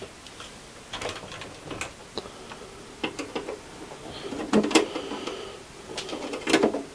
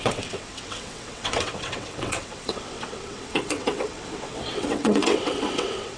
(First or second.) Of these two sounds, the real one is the first